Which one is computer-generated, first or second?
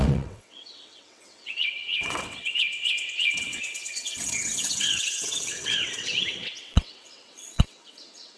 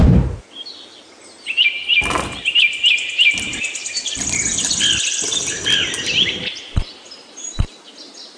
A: first